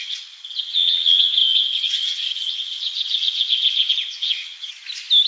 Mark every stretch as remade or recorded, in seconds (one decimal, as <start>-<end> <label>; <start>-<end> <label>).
0.0-4.7 remade; 4.7-5.3 recorded